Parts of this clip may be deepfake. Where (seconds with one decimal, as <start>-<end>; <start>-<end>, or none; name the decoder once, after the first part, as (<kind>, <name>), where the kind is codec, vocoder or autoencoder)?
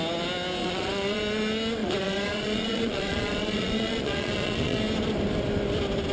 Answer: 0.6-1.2 (vocoder, Vocos); 1.8-4.8